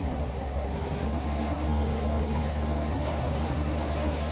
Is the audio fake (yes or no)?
yes